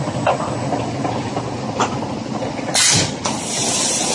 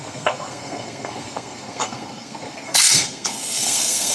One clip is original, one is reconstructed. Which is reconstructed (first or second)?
second